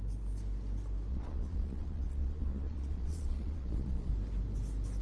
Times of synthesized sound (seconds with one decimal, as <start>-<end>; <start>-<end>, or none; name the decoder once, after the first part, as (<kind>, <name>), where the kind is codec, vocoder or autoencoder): 1.1-4.1 (vocoder, Vocos)